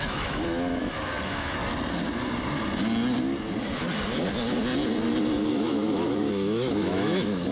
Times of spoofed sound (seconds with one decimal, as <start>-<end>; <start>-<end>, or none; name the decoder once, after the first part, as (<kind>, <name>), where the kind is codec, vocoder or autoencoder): 0.0-1.6 (autoencoder, DAC-VAE); 5.5-7.5